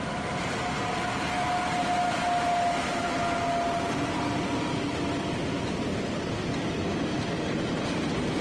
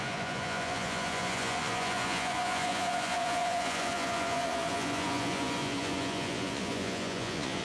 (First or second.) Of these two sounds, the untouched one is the first